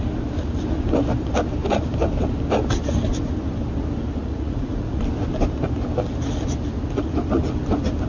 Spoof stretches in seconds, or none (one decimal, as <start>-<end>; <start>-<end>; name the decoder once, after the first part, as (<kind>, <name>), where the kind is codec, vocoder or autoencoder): 4.2-5.0 (vocoder, Vocos)